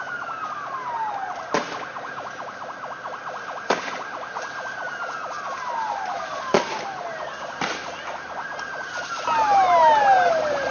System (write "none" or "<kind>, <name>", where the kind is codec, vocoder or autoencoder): none